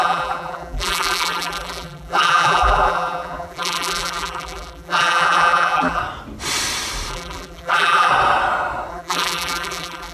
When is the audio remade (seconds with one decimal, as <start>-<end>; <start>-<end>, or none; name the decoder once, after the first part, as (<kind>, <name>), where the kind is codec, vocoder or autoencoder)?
0.0-6.0 (vocoder, BigVGAN v2); 7.1-8.1; 8.9-10.1